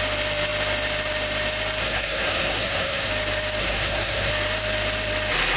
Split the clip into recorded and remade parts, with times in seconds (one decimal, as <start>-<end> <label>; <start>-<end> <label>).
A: 0.0-1.8 recorded; 1.8-3.1 remade; 3.1-3.6 recorded; 3.6-4.3 remade; 4.3-5.6 recorded

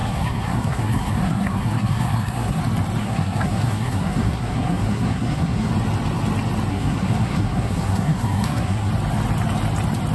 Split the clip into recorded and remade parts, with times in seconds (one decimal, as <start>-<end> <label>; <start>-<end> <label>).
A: 0.0-2.6 remade; 2.6-3.0 recorded; 3.0-5.7 remade; 5.7-6.7 recorded; 6.7-8.9 remade; 8.9-10.1 recorded